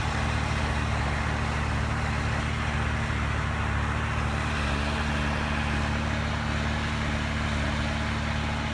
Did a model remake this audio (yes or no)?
no